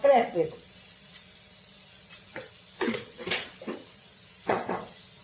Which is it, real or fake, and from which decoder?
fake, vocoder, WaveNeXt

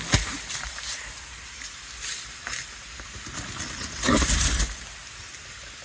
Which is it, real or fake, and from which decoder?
real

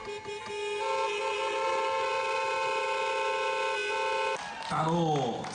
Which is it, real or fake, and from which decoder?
real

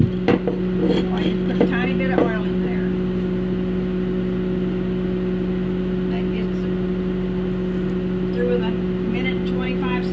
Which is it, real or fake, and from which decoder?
real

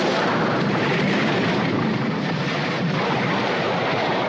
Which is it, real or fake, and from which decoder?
fake, vocoder, BigVGAN v2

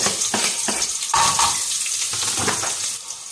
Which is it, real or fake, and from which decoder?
real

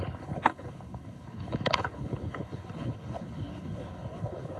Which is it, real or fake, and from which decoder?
fake, codec, HILCodec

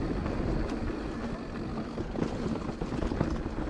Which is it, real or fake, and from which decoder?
real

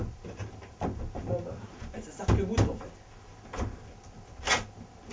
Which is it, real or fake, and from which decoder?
real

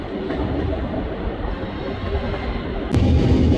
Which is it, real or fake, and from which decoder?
real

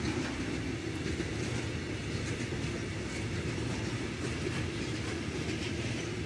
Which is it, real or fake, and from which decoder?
real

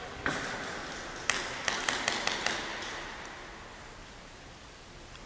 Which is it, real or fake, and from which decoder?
real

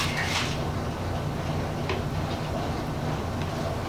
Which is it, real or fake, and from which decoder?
real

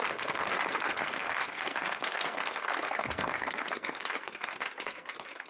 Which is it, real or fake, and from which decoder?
fake, codec, SNAC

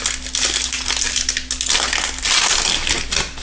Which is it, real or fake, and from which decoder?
real